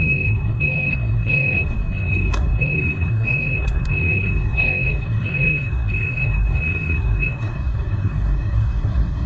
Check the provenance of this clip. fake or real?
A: fake